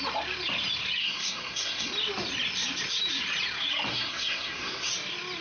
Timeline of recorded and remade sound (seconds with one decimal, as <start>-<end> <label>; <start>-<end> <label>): 0.0-1.0 recorded; 1.0-1.9 remade; 1.9-3.9 recorded; 3.9-4.9 remade; 4.9-5.4 recorded